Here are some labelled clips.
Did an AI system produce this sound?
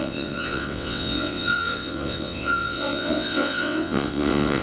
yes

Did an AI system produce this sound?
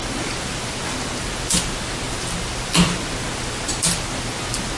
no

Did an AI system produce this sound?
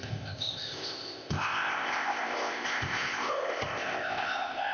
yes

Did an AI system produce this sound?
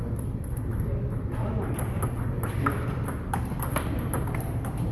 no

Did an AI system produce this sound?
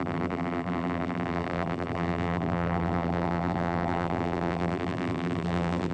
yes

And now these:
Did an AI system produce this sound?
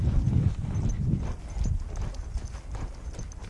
no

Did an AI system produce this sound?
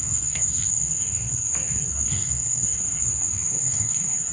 yes